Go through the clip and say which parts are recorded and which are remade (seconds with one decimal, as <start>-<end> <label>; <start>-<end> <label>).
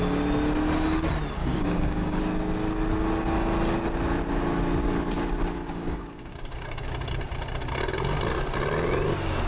0.0-1.4 recorded; 1.4-2.2 remade; 2.2-5.6 recorded; 5.6-6.9 remade; 6.9-9.5 recorded